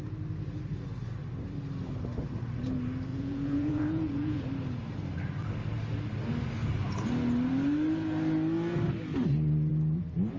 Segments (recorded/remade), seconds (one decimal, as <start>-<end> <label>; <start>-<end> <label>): 0.0-3.1 recorded; 3.1-4.4 remade; 4.4-10.4 recorded